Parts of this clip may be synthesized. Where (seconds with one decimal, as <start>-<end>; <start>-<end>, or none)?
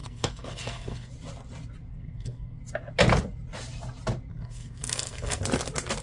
0.0-1.1; 1.9-2.6; 4.3-5.4